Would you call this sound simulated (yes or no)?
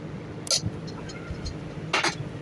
no